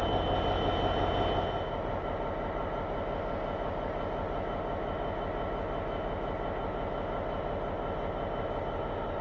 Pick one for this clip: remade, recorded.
recorded